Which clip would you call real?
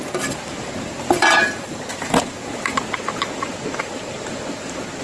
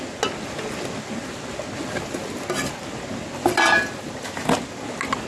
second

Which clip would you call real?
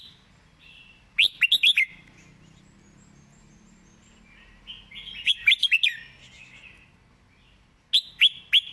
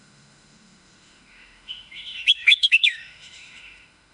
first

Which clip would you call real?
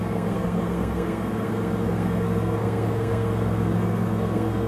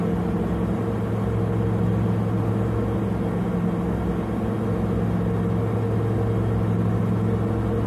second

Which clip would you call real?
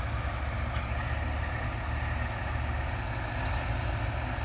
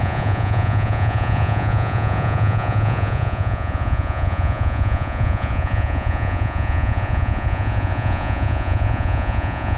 first